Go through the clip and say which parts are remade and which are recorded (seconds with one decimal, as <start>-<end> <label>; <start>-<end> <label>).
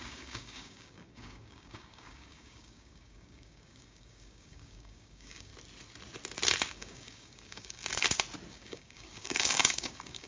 0.0-5.5 remade; 5.5-6.7 recorded; 6.7-7.8 remade; 7.8-8.5 recorded; 8.5-10.3 remade